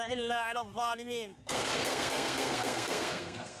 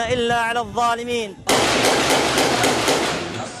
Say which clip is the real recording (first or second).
second